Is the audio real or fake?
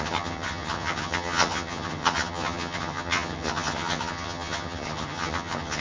fake